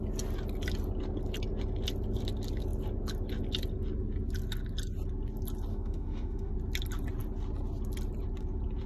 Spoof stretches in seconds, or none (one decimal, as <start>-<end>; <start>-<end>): 5.7-6.5